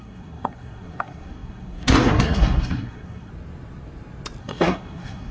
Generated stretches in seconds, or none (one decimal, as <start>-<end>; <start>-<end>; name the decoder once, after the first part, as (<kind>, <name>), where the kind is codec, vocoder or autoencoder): 0.0-3.3 (codec, SNAC); 4.4-5.3